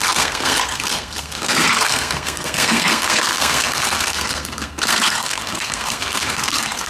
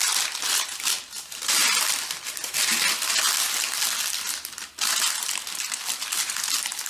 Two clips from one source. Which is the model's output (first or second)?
first